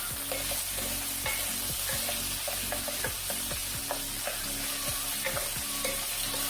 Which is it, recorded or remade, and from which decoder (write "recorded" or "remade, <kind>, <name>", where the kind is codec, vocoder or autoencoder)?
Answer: recorded